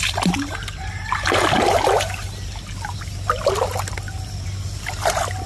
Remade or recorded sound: recorded